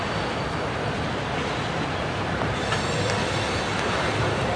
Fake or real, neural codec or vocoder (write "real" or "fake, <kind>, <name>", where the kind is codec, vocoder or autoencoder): real